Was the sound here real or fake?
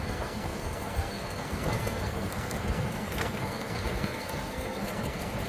fake